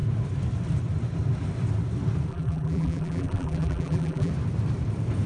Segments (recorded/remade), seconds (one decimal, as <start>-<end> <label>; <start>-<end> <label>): 0.0-2.3 recorded; 2.3-4.3 remade; 4.3-5.3 recorded